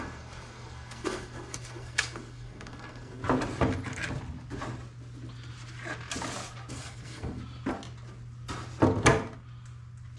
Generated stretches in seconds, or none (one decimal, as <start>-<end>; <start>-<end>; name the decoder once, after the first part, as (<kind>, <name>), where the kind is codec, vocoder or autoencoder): 0.0-3.2 (codec, SNAC); 6.7-7.4